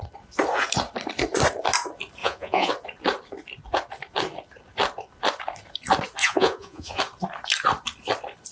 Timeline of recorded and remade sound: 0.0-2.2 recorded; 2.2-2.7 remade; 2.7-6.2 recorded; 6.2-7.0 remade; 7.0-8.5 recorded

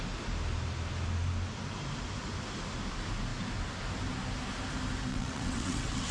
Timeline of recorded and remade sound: 0.0-5.1 recorded; 5.1-6.1 remade

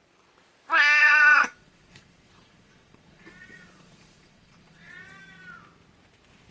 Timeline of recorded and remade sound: 0.0-1.0 recorded; 1.0-4.9 remade; 4.9-6.5 recorded

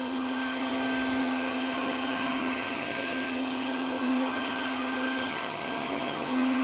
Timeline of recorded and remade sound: 0.0-0.7 remade; 0.7-1.2 recorded; 1.2-6.6 remade

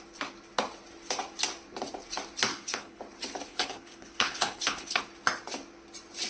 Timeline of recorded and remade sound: 0.0-2.5 recorded; 2.5-3.0 remade; 3.0-3.5 recorded; 3.5-5.0 remade; 5.0-6.3 recorded

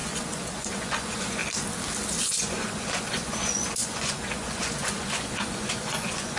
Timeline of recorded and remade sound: 0.0-1.4 remade; 1.4-2.2 recorded; 2.2-6.4 remade

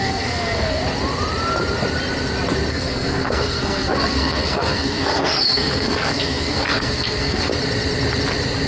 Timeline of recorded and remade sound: 0.0-0.8 remade; 0.8-2.7 recorded; 2.7-7.5 remade; 7.5-8.7 recorded

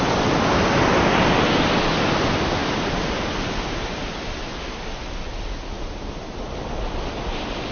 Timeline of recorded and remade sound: 0.0-7.7 recorded